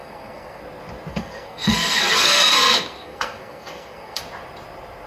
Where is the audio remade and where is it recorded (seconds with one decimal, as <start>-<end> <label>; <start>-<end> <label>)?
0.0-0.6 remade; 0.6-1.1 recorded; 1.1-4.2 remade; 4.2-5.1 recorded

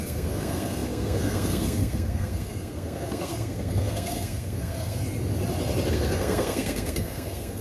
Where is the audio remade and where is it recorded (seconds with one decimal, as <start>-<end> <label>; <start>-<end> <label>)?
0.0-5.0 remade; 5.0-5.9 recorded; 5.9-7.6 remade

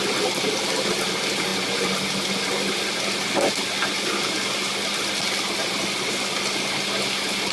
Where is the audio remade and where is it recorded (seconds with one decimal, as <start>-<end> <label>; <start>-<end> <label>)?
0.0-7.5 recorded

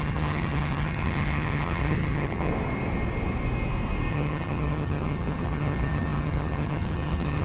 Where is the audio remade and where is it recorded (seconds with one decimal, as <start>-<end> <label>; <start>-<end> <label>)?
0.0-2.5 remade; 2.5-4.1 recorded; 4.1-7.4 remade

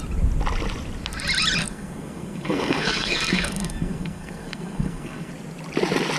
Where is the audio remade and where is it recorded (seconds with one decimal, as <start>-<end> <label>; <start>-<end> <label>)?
0.0-1.6 recorded; 1.6-5.3 remade; 5.3-6.2 recorded

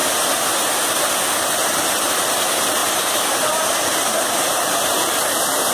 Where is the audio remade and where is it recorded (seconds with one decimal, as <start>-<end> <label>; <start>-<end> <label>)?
0.0-5.7 recorded

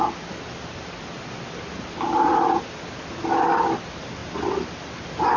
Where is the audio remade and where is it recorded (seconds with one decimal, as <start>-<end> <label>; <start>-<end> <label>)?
0.0-5.4 recorded

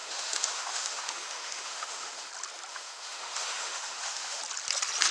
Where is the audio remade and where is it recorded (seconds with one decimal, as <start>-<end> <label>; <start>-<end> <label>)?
0.0-2.3 remade; 2.3-2.7 recorded; 2.7-4.4 remade; 4.4-5.1 recorded